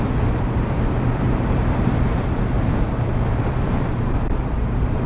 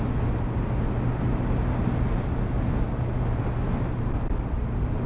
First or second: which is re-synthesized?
first